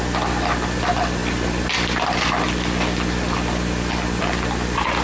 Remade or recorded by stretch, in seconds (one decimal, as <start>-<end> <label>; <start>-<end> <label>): 0.0-1.2 recorded; 1.2-4.2 remade; 4.2-5.0 recorded